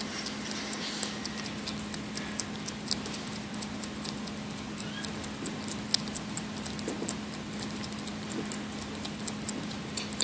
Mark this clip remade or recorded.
recorded